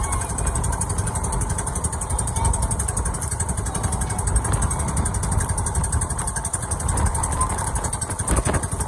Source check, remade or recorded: recorded